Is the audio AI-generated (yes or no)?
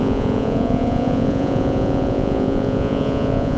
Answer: yes